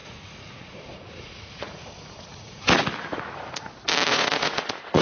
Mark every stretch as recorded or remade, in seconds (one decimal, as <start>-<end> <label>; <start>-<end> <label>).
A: 0.0-2.6 remade; 2.6-4.1 recorded; 4.1-5.0 remade